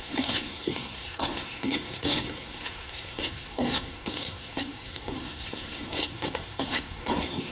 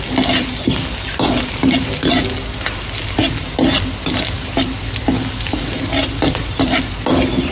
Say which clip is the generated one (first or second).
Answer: first